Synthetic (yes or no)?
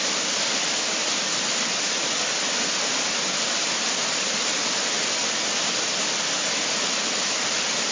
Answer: no